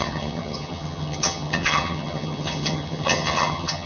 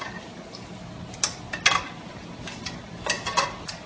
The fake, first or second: first